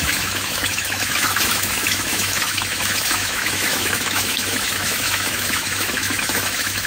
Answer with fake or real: fake